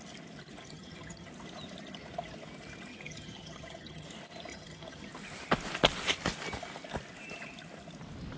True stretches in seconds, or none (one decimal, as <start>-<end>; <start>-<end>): 0.0-0.6; 1.3-2.9; 4.1-4.5; 5.1-8.4